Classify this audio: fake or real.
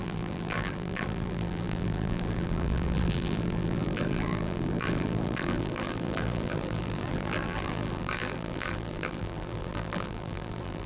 fake